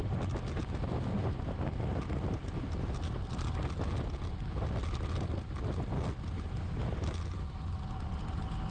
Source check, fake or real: real